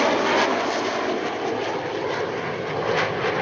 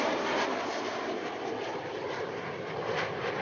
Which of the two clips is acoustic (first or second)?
first